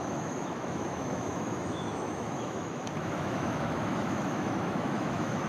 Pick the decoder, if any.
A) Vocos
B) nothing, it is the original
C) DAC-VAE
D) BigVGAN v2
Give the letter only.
C